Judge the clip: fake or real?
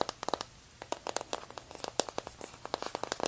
real